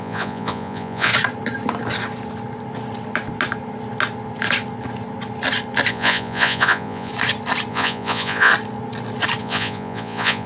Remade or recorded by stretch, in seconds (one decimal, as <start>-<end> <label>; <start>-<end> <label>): 0.0-1.1 remade; 1.1-5.9 recorded; 5.9-7.1 remade; 7.1-7.7 recorded; 7.7-8.5 remade; 8.5-9.4 recorded; 9.4-10.5 remade

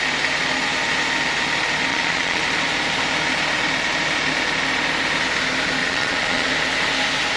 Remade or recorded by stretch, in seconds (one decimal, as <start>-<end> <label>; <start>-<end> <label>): 0.0-1.9 recorded; 1.9-2.4 remade; 2.4-5.8 recorded; 5.8-6.5 remade; 6.5-7.4 recorded

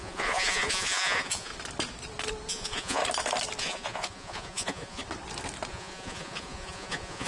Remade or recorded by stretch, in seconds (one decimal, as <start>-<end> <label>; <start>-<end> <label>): 0.0-1.5 remade; 1.5-2.5 recorded; 2.5-3.0 remade; 3.0-3.6 recorded; 3.6-5.0 remade; 5.0-5.7 recorded; 5.7-7.3 remade

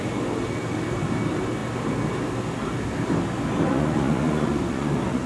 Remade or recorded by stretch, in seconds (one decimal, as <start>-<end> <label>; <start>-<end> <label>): 0.0-3.7 recorded; 3.7-5.3 remade

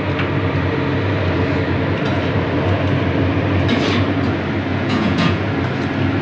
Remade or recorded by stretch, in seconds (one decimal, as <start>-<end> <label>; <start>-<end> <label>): 0.0-4.7 recorded; 4.7-5.4 remade; 5.4-6.2 recorded

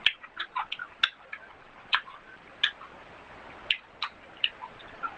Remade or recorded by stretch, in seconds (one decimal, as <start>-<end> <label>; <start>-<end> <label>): 0.0-0.8 remade; 0.8-1.5 recorded; 1.5-2.3 remade; 2.3-4.7 recorded; 4.7-5.2 remade

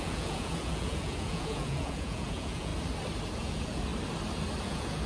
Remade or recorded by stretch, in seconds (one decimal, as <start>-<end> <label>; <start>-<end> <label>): 0.0-2.7 remade; 2.7-3.4 recorded; 3.4-3.9 remade; 3.9-4.6 recorded; 4.6-5.1 remade

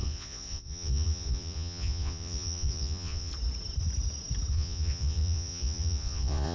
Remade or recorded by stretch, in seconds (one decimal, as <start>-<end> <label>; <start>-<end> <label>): 0.0-3.3 remade; 3.3-4.5 recorded; 4.5-6.5 remade